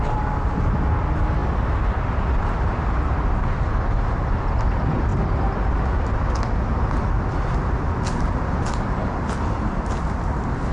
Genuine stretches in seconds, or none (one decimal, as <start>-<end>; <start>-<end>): 0.0-10.7